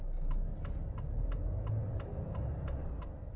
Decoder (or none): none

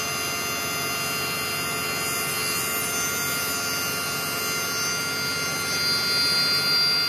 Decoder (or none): none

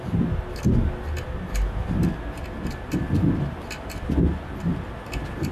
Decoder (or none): none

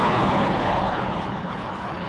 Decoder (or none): codec, HILCodec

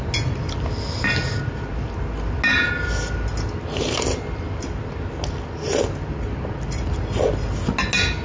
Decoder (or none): none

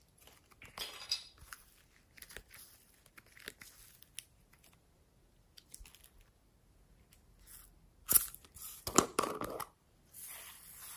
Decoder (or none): none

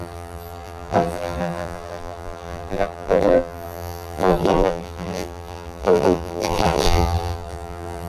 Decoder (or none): vocoder, BigVGAN v2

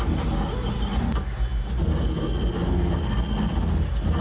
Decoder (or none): none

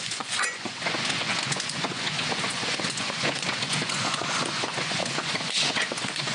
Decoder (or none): vocoder, Vocos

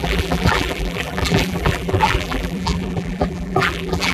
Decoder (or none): vocoder, BigVGAN v2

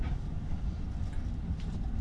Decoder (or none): none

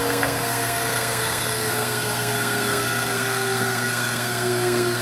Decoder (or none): codec, SNAC